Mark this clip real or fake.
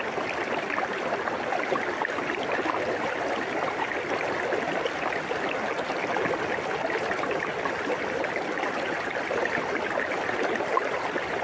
real